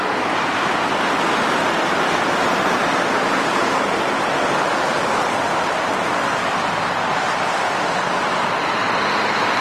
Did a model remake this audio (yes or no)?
no